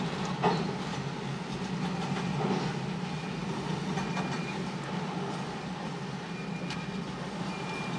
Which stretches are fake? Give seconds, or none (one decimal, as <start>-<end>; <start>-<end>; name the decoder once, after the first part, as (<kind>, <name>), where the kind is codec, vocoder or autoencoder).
none